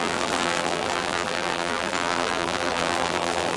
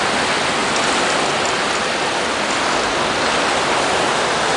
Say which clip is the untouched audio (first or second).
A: second